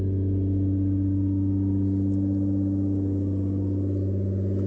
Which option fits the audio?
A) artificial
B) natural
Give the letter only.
B